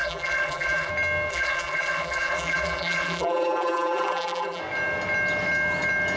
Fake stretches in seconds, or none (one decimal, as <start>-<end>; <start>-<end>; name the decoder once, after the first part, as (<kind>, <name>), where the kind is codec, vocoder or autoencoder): 0.0-0.9 (vocoder, BigVGAN v2); 1.3-4.6